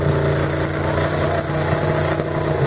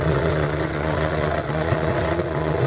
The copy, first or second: second